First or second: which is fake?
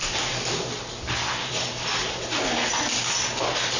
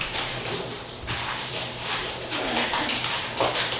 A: second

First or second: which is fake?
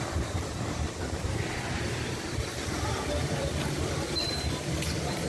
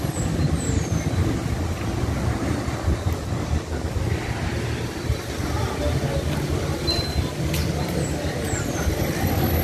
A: first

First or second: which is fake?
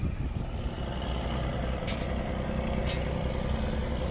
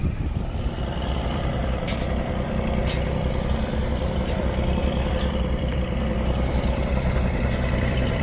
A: second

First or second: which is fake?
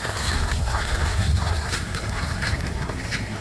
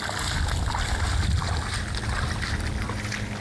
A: first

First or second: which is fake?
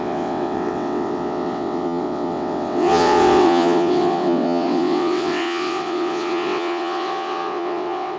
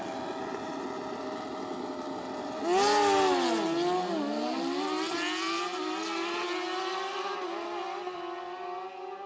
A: first